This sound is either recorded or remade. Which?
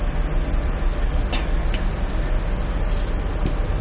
recorded